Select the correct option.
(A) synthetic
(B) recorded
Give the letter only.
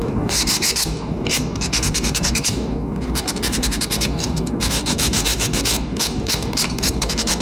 A